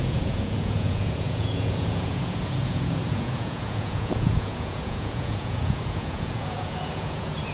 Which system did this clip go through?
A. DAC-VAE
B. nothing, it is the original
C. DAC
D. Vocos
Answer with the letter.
D